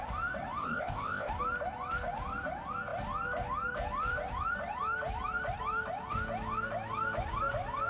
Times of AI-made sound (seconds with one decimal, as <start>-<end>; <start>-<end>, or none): 0.6-1.3